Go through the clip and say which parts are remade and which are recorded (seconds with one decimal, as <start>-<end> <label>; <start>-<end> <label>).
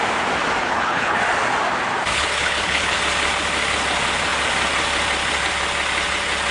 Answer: 0.0-0.6 recorded; 0.6-1.2 remade; 1.2-2.1 recorded; 2.1-3.0 remade; 3.0-6.5 recorded